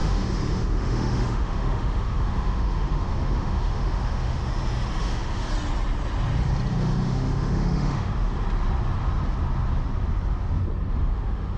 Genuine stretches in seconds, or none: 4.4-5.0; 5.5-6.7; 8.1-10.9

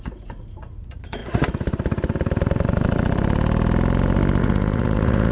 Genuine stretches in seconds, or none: 1.2-4.4